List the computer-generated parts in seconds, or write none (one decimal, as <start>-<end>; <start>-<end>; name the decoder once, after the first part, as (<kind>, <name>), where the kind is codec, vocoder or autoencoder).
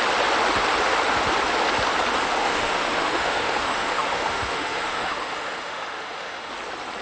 2.4-6.5 (autoencoder, DAC-VAE)